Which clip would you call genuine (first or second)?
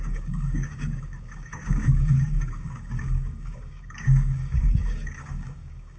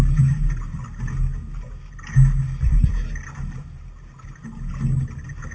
second